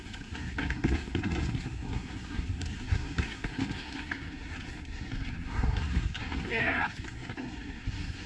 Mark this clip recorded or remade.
remade